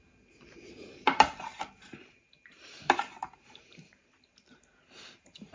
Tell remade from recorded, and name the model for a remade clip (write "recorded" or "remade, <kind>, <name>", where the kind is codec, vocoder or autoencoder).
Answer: remade, vocoder, BigVGAN v2